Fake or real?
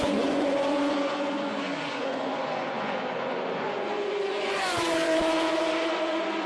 fake